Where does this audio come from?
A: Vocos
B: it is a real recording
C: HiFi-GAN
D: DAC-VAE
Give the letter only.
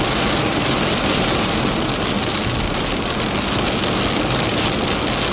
B